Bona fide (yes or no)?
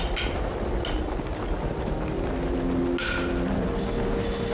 yes